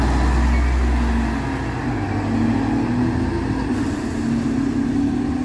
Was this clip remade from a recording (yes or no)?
no